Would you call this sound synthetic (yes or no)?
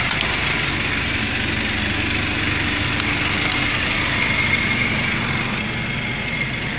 no